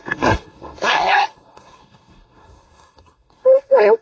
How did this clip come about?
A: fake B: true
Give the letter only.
A